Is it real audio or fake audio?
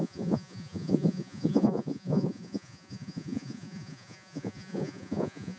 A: fake